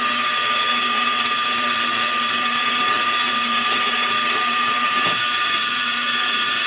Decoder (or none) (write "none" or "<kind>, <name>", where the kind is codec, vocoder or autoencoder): vocoder, HiFi-GAN